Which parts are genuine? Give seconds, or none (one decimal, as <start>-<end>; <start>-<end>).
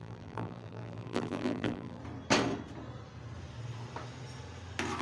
2.0-5.0